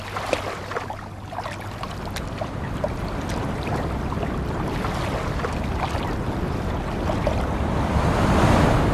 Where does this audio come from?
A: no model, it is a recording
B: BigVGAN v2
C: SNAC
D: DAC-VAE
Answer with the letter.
A